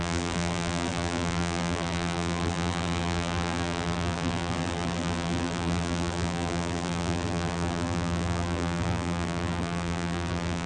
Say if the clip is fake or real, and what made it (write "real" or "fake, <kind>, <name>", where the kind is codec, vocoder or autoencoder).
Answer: fake, vocoder, BigVGAN v2